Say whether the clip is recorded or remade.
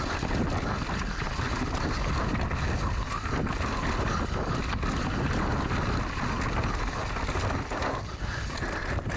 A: recorded